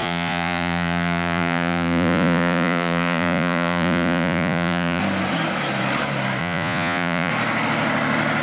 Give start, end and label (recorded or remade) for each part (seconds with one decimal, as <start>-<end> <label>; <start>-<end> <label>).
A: 0.0-5.0 remade; 5.0-6.4 recorded; 6.4-7.3 remade; 7.3-8.4 recorded